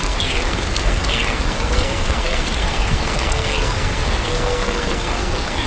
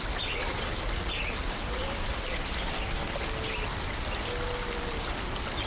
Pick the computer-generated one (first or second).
first